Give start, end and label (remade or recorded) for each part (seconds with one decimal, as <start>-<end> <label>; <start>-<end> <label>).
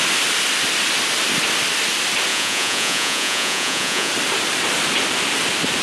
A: 0.0-2.3 recorded; 2.3-4.1 remade; 4.1-5.8 recorded